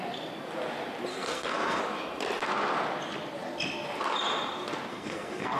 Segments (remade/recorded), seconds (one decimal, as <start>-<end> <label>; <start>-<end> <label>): 0.0-1.1 recorded; 1.1-1.8 remade; 1.8-4.9 recorded; 4.9-5.6 remade